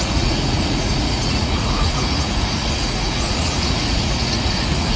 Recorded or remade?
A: remade